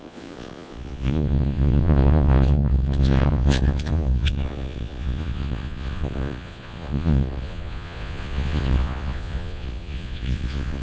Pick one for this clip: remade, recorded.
remade